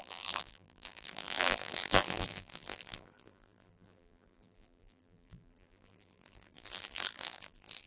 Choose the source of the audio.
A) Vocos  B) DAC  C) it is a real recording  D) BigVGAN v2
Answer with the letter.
D